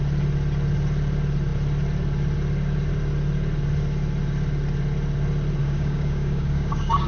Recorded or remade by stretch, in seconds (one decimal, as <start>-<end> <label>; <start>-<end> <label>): 0.0-5.6 recorded; 5.6-7.1 remade